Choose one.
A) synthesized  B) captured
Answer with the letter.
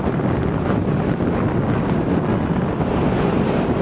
B